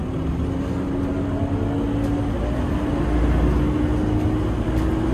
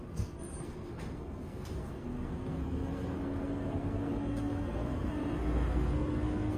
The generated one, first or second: second